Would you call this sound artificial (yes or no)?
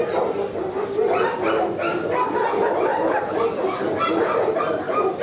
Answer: no